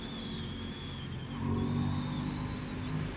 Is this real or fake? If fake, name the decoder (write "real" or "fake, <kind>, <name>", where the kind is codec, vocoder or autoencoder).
real